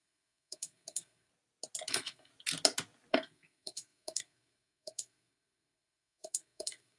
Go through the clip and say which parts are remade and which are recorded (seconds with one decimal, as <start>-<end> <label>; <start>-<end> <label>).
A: 0.0-1.3 remade; 1.3-1.9 recorded; 1.9-2.3 remade; 2.3-3.1 recorded; 3.1-7.0 remade